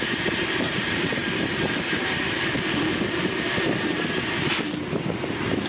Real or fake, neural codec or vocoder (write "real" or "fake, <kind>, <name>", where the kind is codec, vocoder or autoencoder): fake, vocoder, BigVGAN v2